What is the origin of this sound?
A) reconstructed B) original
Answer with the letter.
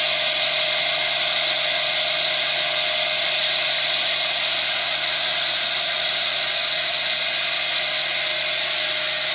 B